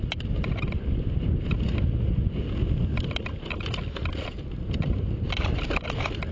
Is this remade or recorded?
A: recorded